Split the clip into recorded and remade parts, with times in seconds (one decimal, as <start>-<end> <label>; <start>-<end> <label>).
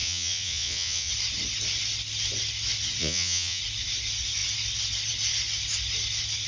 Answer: 0.0-1.1 remade; 1.1-3.0 recorded; 3.0-3.6 remade; 3.6-6.5 recorded